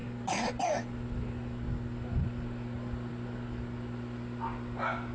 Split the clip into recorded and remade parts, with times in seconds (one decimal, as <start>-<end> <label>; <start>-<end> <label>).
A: 0.0-5.1 recorded